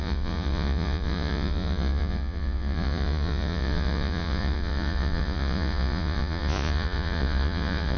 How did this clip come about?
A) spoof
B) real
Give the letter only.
A